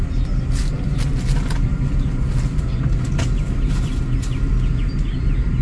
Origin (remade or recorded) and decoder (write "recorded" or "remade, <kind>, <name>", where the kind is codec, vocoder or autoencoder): recorded